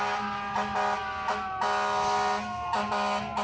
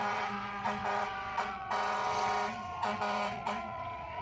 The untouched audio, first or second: first